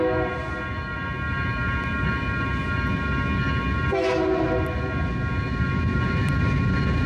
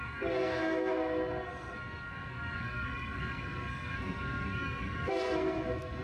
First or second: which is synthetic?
second